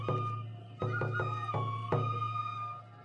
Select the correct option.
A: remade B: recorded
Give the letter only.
B